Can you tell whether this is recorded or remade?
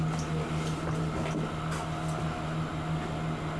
recorded